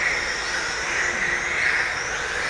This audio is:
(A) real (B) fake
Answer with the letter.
A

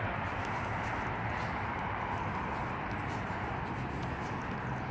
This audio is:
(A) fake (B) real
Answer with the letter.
B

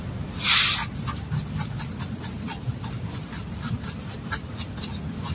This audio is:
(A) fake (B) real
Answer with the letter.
B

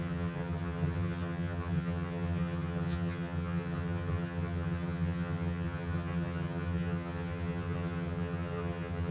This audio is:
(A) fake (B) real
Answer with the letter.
A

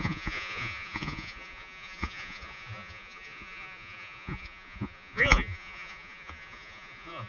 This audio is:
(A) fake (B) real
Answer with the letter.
A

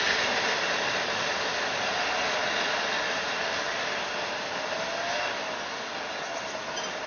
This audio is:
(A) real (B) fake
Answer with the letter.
A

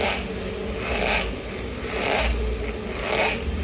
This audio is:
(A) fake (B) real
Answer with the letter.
B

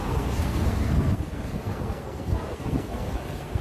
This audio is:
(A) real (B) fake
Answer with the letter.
B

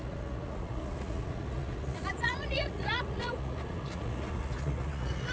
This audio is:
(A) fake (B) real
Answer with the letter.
A